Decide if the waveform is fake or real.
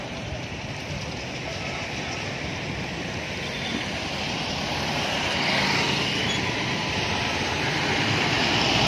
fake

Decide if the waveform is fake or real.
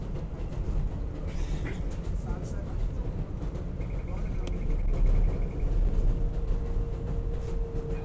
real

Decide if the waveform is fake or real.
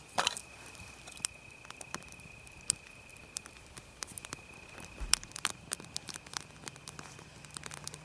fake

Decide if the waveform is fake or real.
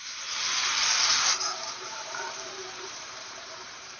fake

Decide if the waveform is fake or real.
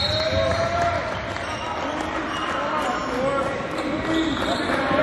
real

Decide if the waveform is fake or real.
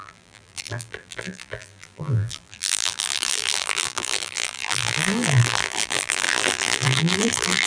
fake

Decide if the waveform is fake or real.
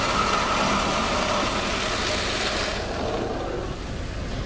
real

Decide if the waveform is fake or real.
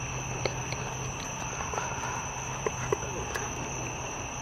real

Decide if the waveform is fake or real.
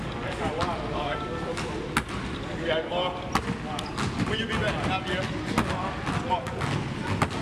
real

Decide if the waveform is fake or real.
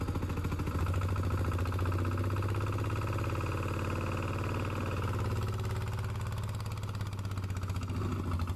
real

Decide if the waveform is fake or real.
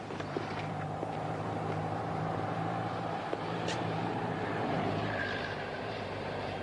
fake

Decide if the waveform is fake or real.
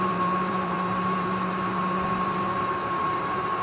fake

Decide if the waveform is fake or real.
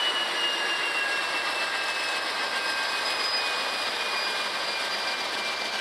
real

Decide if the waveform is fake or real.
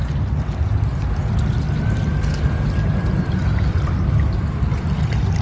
real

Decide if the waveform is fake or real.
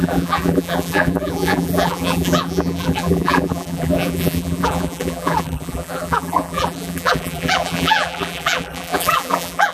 fake